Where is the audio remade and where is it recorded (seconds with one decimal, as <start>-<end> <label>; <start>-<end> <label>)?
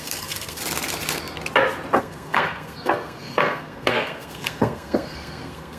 0.0-0.6 remade; 0.6-2.0 recorded; 2.0-5.8 remade